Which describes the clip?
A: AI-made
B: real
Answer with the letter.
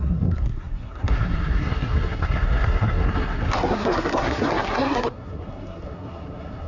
A